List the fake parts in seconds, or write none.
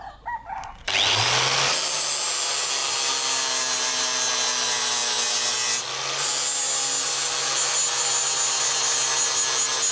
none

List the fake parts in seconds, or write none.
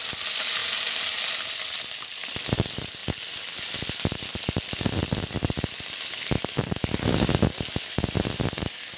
none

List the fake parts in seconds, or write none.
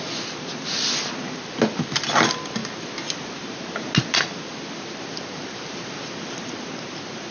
none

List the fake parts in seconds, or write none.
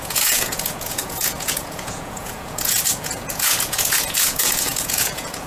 0.0-5.5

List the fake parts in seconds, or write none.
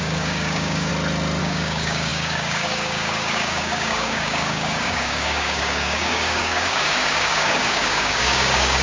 0.0-0.9; 1.4-8.8